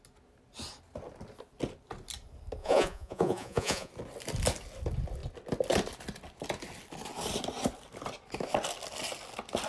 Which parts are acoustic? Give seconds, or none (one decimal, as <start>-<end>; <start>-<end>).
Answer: 0.0-2.6; 3.9-9.7

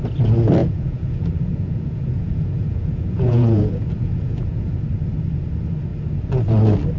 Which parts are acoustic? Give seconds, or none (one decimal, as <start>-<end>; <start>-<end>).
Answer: 0.0-0.6; 4.8-7.0

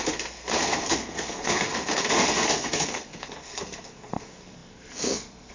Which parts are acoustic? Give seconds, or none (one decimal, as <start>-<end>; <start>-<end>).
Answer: none

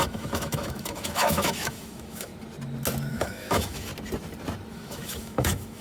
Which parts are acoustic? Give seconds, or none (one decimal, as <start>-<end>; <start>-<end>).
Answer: 2.3-3.1; 3.9-4.7

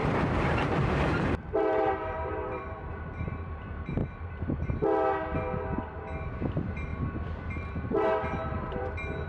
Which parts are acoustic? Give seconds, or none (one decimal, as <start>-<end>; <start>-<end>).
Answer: 4.0-6.5; 6.9-7.4